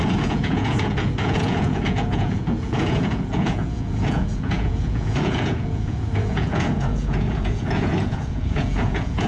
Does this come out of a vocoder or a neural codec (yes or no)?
yes